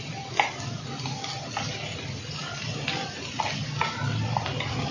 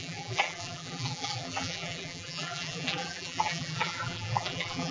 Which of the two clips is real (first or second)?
first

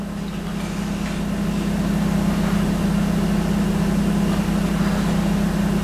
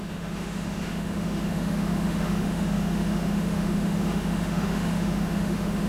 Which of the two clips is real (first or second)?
first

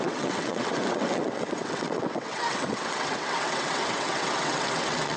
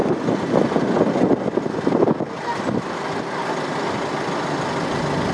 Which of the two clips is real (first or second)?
second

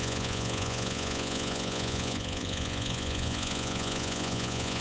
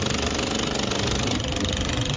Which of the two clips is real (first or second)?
second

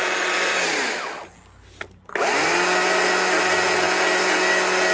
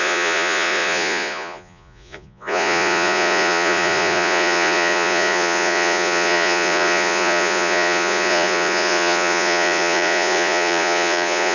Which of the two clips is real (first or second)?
first